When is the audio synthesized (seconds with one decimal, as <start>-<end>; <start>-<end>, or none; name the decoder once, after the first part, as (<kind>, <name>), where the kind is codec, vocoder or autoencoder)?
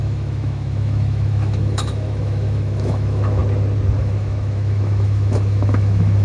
0.0-3.4 (autoencoder, DAC-VAE); 4.0-6.2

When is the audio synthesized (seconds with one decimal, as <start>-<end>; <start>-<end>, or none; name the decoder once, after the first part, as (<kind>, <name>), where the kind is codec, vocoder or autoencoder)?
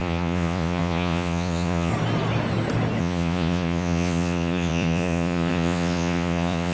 0.0-1.9 (vocoder, Vocos); 3.0-6.7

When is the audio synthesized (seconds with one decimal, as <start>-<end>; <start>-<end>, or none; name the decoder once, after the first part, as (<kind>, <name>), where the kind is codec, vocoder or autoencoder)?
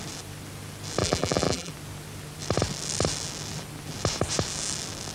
1.0-1.7 (vocoder, BigVGAN v2)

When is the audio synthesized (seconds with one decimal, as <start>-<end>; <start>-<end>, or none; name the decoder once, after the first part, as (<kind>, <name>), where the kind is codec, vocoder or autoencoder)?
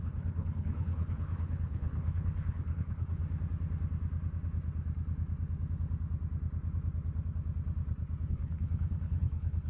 0.0-3.2 (codec, HILCodec); 8.3-9.7